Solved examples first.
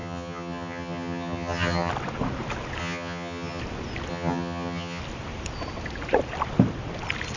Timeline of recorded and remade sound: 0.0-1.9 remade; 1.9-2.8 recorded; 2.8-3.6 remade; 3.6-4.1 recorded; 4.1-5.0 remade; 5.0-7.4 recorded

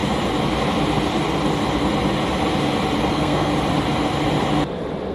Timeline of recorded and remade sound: 0.0-3.1 recorded; 3.1-3.5 remade; 3.5-5.1 recorded